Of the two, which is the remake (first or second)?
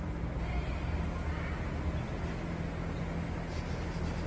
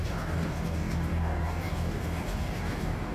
second